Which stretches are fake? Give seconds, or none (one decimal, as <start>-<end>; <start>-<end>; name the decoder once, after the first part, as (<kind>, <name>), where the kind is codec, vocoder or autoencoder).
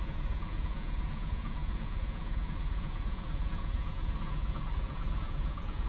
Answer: 0.0-5.9 (vocoder, Vocos)